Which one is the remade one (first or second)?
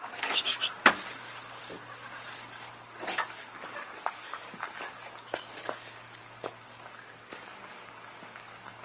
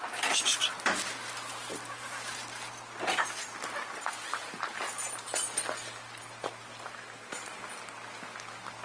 first